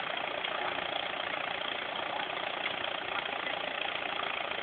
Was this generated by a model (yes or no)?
no